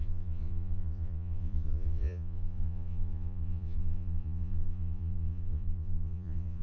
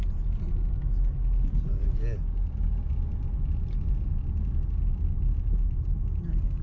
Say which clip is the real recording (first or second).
second